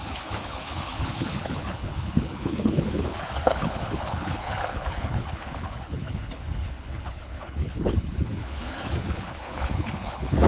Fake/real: fake